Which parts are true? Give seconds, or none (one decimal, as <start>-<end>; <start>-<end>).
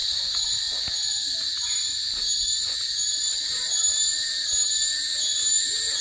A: 0.0-6.0